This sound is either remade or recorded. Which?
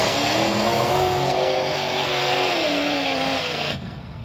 remade